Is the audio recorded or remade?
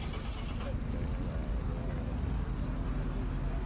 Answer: recorded